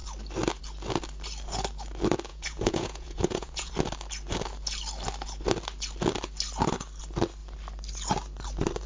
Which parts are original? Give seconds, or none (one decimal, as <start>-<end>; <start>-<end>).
0.0-2.3; 3.7-8.9